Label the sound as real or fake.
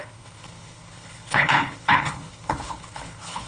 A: fake